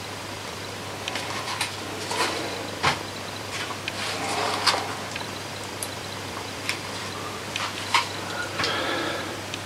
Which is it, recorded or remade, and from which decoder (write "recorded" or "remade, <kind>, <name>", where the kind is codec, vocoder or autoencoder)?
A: remade, vocoder, BigVGAN v2